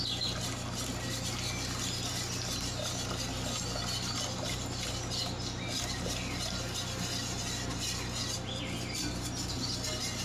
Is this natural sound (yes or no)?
yes